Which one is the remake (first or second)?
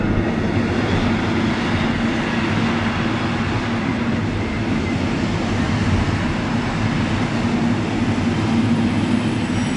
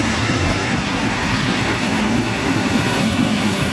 second